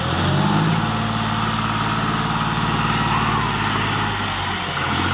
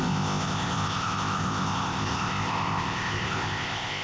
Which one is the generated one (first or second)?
second